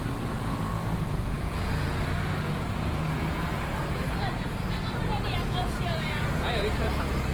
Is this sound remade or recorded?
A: remade